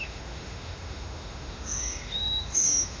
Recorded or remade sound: remade